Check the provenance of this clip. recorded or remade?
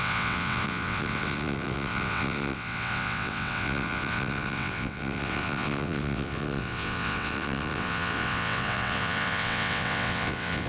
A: remade